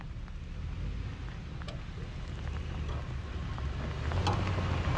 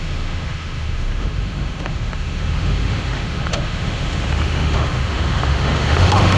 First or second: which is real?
first